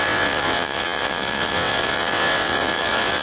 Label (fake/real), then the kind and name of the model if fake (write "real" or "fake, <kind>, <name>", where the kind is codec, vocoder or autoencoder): fake, vocoder, WaveNeXt